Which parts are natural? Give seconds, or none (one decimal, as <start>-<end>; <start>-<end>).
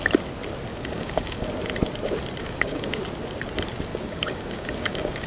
0.0-0.7; 1.4-2.4; 3.0-3.9